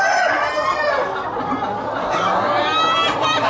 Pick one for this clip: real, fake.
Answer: real